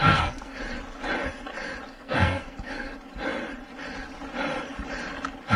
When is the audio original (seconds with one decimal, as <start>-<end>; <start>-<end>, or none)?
0.6-1.9; 2.9-5.6